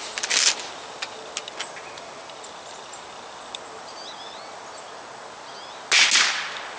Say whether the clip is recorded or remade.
recorded